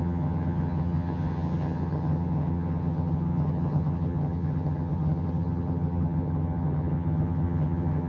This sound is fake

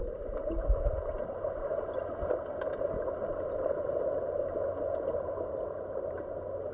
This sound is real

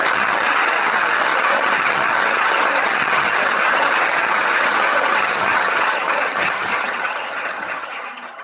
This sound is fake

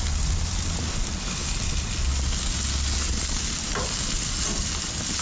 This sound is real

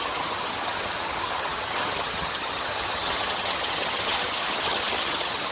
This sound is fake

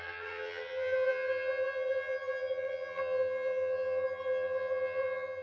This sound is fake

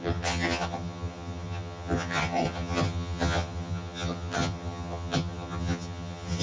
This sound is fake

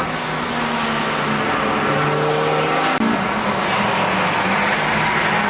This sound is real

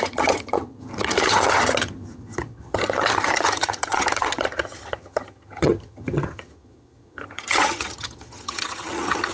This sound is fake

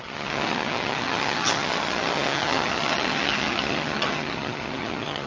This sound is fake